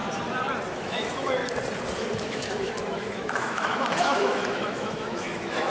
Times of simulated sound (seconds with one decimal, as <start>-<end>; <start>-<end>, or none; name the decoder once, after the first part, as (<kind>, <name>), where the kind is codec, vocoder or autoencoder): 0.7-1.4 (autoencoder, DAC-VAE); 2.2-5.7